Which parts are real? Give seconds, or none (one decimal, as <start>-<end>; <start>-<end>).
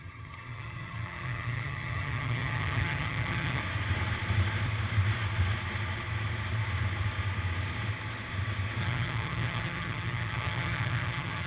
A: 3.6-8.8